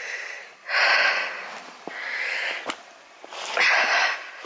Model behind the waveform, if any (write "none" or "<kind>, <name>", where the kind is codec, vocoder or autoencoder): none